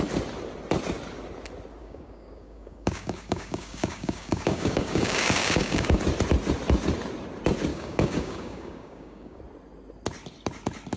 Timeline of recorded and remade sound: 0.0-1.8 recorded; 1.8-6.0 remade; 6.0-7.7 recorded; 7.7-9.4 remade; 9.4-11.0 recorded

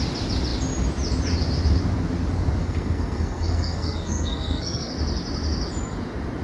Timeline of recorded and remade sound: 0.0-2.6 recorded; 2.6-4.9 remade; 4.9-6.4 recorded

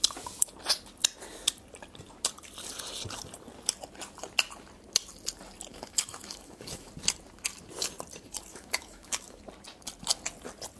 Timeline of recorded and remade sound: 0.0-5.7 recorded; 5.7-6.9 remade; 6.9-8.5 recorded; 8.5-9.4 remade; 9.4-10.8 recorded